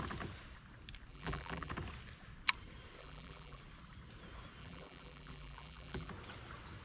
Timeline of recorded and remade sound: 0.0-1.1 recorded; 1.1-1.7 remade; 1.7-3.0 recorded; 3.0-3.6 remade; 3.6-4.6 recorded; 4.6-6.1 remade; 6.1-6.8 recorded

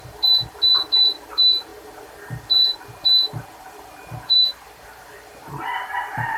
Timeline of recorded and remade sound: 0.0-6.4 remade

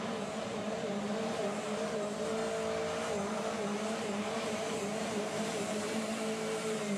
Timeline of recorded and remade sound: 0.0-2.4 remade; 2.4-3.3 recorded; 3.3-7.0 remade